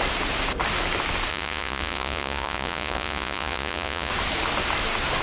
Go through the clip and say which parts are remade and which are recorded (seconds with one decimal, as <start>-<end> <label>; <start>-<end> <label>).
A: 0.0-1.3 recorded; 1.3-4.1 remade; 4.1-5.2 recorded